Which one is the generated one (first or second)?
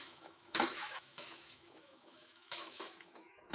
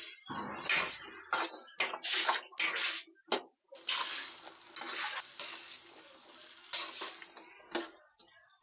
first